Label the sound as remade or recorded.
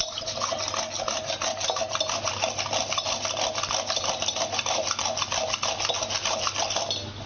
recorded